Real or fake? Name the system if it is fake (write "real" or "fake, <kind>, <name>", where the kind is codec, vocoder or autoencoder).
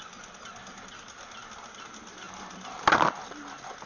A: real